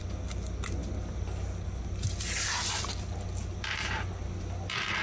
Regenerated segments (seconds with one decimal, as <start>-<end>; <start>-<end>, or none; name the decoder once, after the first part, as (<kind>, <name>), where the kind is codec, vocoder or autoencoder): none